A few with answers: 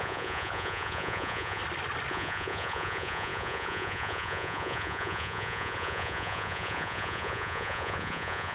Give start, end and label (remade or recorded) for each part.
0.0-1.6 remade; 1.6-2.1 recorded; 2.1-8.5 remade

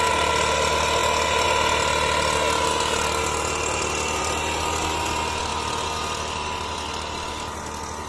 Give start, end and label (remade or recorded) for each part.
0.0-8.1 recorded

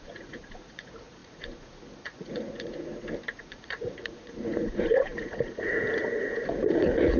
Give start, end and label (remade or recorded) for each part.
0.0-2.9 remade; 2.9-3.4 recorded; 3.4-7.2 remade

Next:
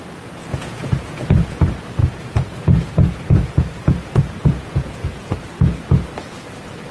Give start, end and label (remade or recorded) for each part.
0.0-0.5 recorded; 0.5-1.6 remade; 1.6-2.0 recorded; 2.0-5.3 remade; 5.3-6.9 recorded

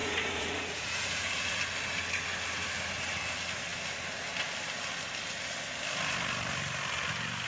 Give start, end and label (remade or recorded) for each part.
0.0-1.6 remade; 1.6-7.5 recorded